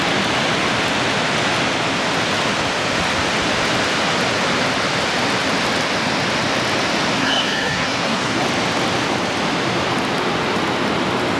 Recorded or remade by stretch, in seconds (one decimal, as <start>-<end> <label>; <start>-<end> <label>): 0.0-7.2 recorded; 7.2-8.4 remade; 8.4-11.4 recorded